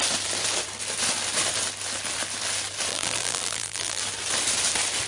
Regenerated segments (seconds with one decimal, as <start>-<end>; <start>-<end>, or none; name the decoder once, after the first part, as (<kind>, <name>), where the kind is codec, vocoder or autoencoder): 2.9-4.0 (vocoder, BigVGAN v2)